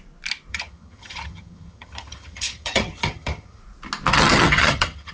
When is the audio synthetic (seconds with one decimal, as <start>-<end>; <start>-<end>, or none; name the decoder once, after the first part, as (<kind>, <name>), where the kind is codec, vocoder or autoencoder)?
0.5-3.6 (vocoder, HiFi-GAN); 4.1-5.1